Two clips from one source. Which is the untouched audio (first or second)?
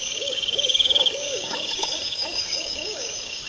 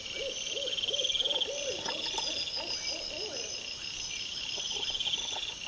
second